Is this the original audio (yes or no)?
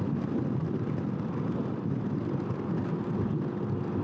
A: yes